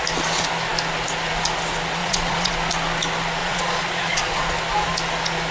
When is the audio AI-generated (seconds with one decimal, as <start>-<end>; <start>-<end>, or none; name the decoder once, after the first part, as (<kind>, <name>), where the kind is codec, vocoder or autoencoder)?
2.0-2.5 (vocoder, Vocos); 3.4-4.5